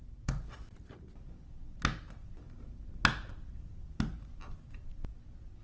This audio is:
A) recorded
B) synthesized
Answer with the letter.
A